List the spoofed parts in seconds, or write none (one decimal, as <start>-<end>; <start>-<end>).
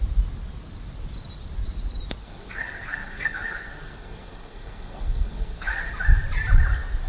2.2-5.9